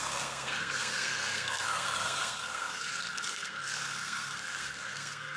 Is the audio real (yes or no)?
no